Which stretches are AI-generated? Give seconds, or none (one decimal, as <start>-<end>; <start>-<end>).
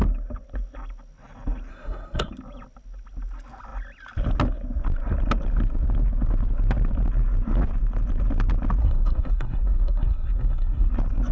1.7-2.3; 8.8-10.9